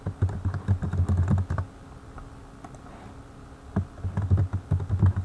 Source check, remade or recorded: recorded